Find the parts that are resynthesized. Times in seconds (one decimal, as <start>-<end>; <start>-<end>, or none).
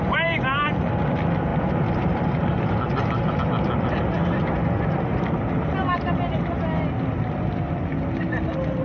none